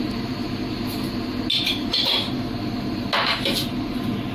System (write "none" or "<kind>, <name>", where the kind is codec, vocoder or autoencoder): none